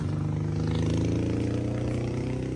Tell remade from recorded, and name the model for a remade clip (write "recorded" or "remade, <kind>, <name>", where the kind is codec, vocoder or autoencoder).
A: recorded